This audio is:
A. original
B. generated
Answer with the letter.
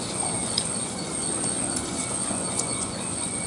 B